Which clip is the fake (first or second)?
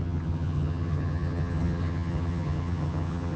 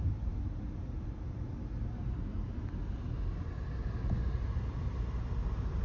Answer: first